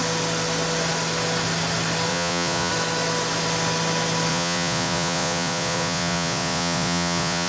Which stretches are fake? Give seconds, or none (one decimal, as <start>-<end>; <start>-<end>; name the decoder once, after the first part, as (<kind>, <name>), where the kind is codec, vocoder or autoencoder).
2.1-2.7 (vocoder, Vocos); 4.3-7.5